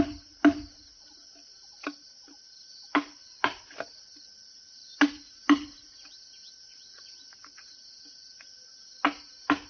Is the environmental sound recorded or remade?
recorded